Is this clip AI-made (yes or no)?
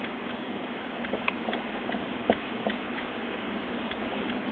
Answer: yes